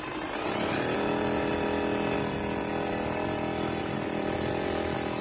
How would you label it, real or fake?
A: real